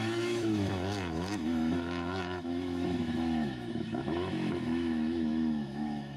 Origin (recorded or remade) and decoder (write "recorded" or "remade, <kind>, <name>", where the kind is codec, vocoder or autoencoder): remade, autoencoder, DAC-VAE